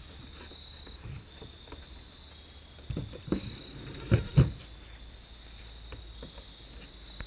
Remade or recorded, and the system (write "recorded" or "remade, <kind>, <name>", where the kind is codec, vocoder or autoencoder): recorded